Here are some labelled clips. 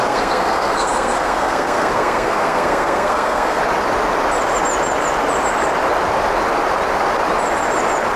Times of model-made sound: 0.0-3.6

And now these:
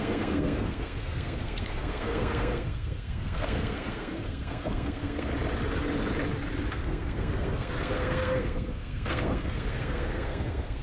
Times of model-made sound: 0.0-5.3; 6.7-10.8

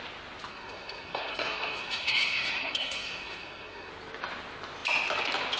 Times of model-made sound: 0.5-3.9

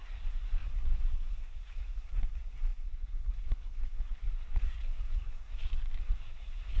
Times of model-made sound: 0.0-6.8

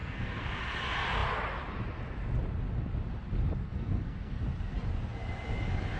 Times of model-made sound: 0.0-0.6; 3.6-4.4

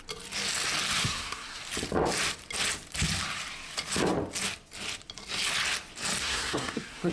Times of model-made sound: 1.0-1.6; 6.2-7.1